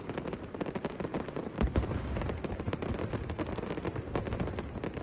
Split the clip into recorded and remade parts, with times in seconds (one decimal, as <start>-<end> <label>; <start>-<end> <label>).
0.0-1.1 recorded; 1.1-2.9 remade; 2.9-5.0 recorded